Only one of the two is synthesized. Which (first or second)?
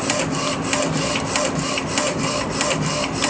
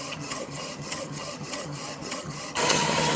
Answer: second